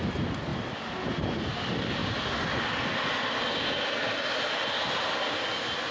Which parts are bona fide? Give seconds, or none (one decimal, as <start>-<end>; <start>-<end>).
0.0-5.9